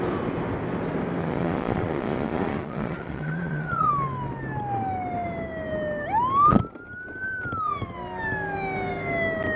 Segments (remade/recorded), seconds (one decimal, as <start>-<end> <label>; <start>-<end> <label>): 0.0-1.2 recorded; 1.2-3.9 remade; 3.9-9.6 recorded